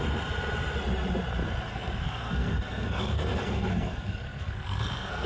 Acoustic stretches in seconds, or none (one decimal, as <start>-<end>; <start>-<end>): 0.0-1.7